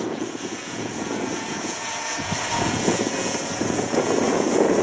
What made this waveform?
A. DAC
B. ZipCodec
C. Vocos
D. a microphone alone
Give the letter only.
C